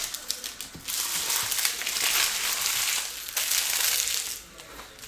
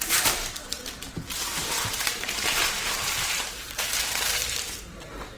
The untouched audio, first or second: first